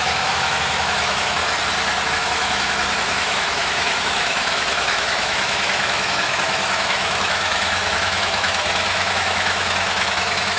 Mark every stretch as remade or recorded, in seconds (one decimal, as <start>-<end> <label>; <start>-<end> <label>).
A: 0.0-1.4 remade; 1.4-2.1 recorded; 2.1-10.6 remade